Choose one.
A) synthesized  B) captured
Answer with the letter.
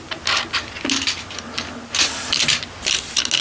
B